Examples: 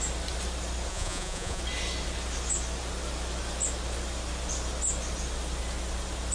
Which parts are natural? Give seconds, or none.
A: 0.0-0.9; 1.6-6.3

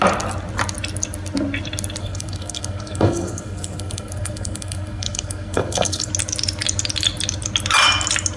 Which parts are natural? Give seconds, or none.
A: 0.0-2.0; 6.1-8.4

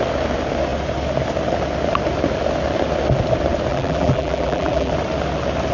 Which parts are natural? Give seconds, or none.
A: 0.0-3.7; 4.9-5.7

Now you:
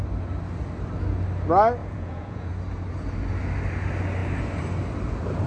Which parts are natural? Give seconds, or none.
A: 0.0-1.8; 2.5-5.5